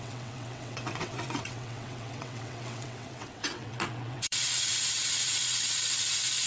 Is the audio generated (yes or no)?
yes